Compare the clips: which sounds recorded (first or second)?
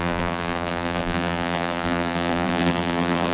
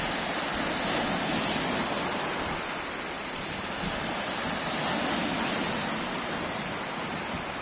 second